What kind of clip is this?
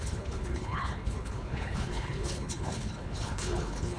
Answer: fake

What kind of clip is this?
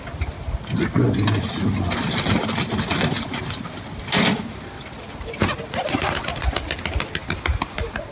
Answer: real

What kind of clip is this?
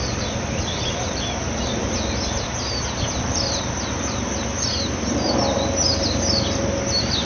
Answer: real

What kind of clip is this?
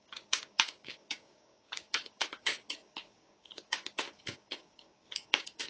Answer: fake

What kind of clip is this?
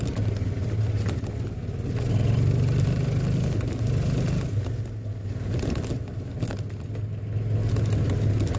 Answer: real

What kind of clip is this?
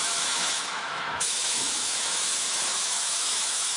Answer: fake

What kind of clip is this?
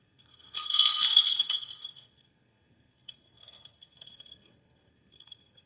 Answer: fake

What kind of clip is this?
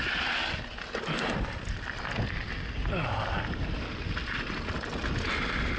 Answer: real